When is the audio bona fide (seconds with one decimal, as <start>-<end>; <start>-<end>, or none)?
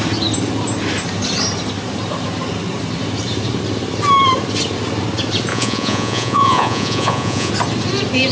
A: 0.0-5.5; 7.5-8.3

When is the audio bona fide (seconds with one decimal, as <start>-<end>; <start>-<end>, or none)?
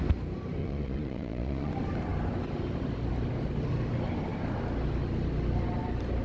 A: 0.0-0.6; 1.7-6.2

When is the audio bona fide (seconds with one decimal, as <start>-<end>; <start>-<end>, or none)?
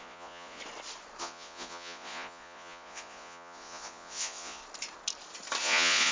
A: 0.6-1.2; 4.6-5.6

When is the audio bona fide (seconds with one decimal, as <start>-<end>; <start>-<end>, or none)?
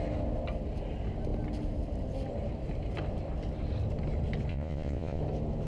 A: 0.0-4.5; 5.2-5.7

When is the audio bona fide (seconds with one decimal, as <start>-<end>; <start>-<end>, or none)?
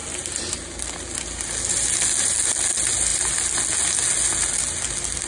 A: 0.0-5.3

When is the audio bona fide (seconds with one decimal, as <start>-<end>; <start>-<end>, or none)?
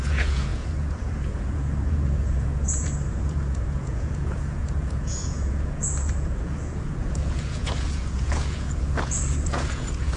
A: none